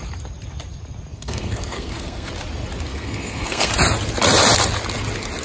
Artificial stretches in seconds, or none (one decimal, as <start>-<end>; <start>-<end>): 1.1-2.3; 2.9-3.7